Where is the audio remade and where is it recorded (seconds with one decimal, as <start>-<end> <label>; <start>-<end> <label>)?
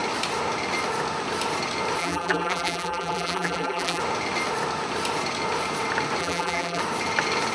0.0-2.0 recorded; 2.0-4.0 remade; 4.0-6.2 recorded; 6.2-6.8 remade; 6.8-7.5 recorded